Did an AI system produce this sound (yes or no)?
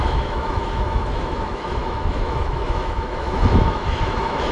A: yes